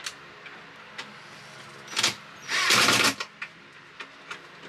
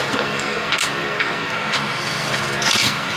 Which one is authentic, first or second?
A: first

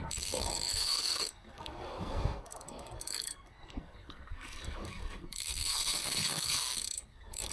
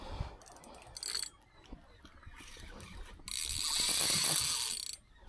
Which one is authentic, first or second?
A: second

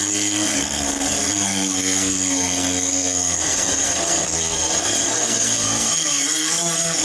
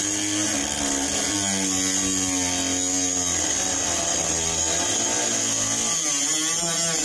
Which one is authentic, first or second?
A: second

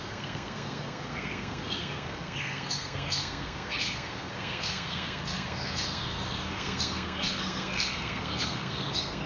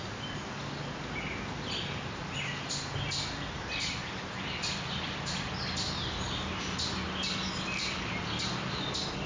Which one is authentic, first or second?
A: second